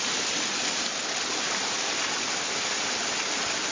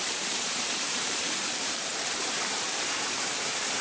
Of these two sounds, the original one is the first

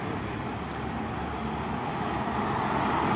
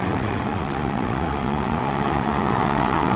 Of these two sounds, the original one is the first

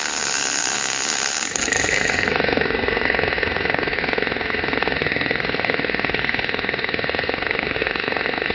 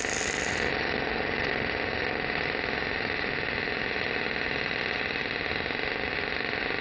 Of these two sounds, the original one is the second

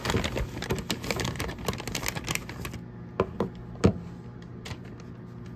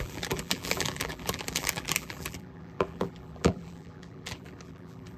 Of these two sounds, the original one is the first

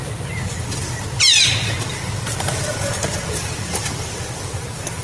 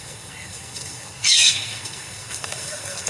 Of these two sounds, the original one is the first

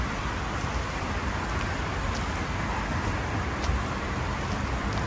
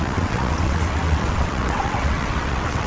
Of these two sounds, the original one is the first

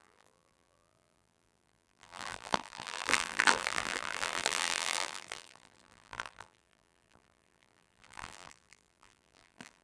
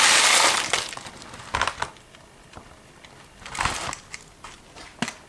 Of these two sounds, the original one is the second